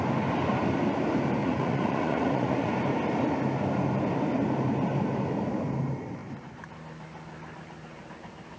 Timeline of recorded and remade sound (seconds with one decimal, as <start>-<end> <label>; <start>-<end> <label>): 0.0-1.4 recorded; 1.4-2.7 remade; 2.7-8.6 recorded